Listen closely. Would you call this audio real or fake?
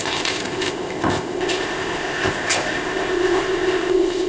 fake